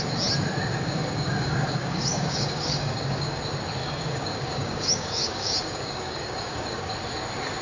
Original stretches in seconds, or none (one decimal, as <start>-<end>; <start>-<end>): 0.0-0.7; 3.4-3.8; 6.9-7.6